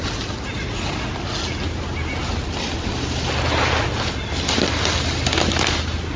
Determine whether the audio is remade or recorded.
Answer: recorded